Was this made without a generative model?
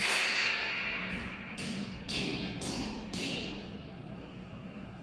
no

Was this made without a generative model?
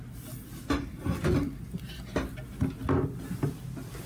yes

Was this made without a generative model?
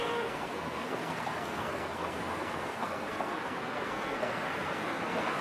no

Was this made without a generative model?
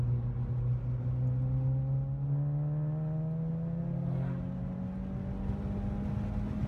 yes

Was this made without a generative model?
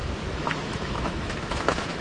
no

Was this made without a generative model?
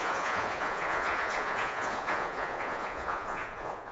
no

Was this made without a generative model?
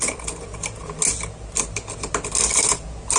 yes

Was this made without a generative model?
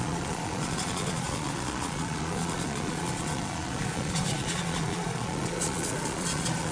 no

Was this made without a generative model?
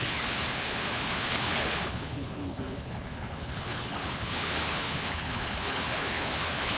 no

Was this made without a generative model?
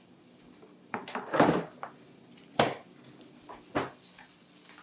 yes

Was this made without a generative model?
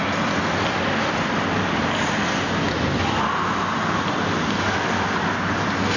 yes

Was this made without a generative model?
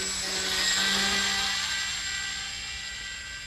yes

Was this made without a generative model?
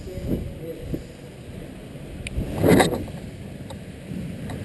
yes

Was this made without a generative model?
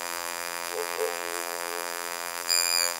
no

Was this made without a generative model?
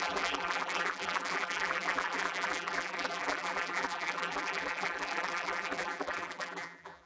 no